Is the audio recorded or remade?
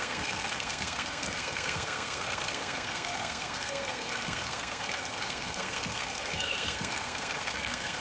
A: remade